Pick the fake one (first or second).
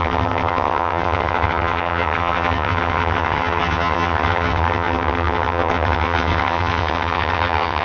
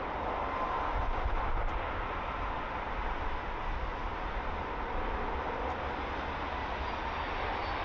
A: first